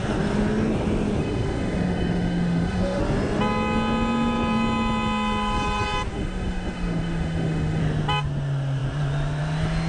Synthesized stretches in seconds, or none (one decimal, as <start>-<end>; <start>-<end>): 1.2-3.0; 6.1-7.8